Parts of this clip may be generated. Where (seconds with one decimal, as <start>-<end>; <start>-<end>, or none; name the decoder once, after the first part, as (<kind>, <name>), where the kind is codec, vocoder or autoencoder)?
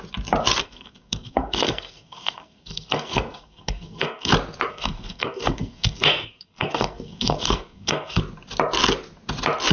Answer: 0.6-4.3 (codec, SNAC); 4.7-8.2